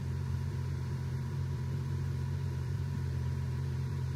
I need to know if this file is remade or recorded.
remade